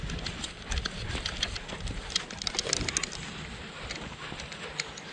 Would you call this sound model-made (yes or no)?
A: no